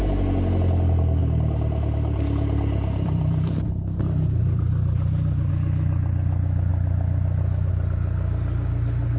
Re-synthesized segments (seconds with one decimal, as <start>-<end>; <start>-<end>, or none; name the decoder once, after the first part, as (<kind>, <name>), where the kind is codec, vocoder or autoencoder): 1.2-5.5 (vocoder, BigVGAN v2)